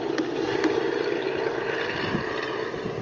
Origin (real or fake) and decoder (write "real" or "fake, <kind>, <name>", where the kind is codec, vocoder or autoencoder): real